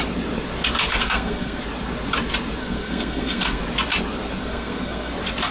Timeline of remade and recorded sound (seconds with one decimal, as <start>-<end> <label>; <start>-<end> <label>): 0.0-0.9 recorded; 0.9-1.6 remade; 1.6-2.6 recorded; 2.6-3.6 remade; 3.6-4.4 recorded; 4.4-5.1 remade; 5.1-5.5 recorded